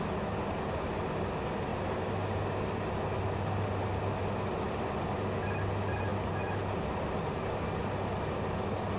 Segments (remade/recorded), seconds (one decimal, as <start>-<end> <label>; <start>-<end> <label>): 0.0-9.0 recorded